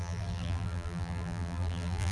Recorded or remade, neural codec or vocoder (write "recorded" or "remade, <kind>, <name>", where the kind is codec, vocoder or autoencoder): remade, vocoder, BigVGAN v2